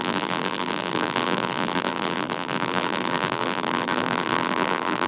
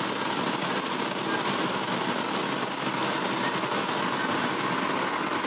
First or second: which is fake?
first